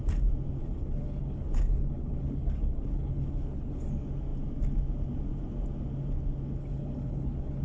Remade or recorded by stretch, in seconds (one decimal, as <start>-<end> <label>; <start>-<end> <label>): 0.0-0.6 recorded; 0.6-3.9 remade; 3.9-6.6 recorded; 6.6-7.6 remade